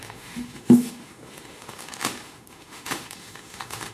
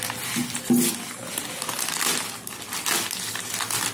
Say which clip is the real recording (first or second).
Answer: second